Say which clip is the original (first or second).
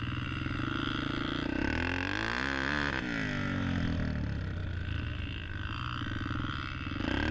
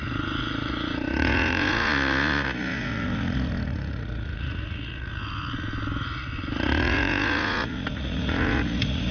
first